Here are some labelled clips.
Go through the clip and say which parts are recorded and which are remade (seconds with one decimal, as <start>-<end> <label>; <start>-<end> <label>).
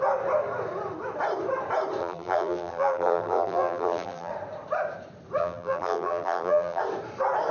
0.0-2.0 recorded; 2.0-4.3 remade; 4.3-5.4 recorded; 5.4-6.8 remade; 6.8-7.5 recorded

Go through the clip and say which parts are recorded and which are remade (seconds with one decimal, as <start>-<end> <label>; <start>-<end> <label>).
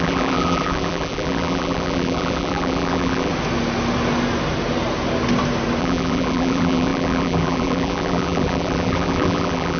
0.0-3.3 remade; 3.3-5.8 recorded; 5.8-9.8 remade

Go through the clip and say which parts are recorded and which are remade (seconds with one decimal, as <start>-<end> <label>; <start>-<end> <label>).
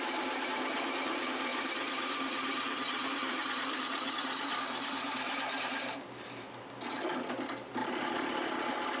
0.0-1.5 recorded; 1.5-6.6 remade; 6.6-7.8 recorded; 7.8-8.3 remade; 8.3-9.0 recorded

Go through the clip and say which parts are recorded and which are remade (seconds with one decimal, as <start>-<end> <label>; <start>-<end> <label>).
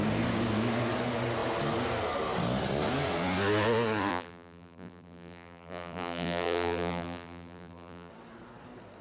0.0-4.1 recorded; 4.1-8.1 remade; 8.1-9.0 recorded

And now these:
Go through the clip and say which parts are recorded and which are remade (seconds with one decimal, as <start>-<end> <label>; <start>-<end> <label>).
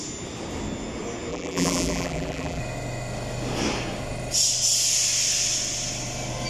0.0-1.3 recorded; 1.3-2.6 remade; 2.6-6.5 recorded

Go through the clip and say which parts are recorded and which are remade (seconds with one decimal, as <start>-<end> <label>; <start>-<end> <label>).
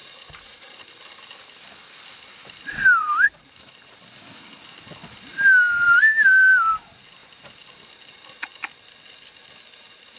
0.0-0.9 remade; 0.9-3.0 recorded; 3.0-3.7 remade; 3.7-10.2 recorded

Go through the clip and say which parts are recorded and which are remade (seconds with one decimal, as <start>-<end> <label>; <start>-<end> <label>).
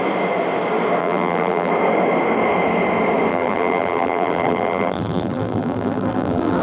0.0-1.0 recorded; 1.0-1.7 remade; 1.7-3.3 recorded; 3.3-6.6 remade